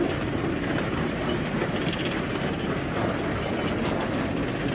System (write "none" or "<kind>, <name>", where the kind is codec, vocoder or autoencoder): vocoder, BigVGAN v2